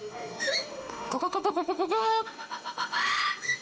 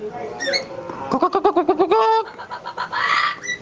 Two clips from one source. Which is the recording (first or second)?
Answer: second